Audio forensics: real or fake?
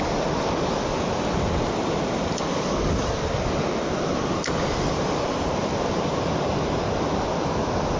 real